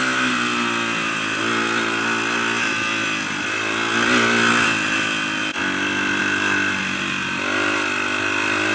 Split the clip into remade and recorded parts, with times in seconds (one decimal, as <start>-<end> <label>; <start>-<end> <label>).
0.0-8.7 recorded